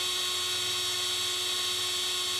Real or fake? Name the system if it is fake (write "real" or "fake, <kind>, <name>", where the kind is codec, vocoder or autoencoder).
real